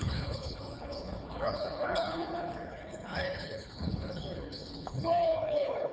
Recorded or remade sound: remade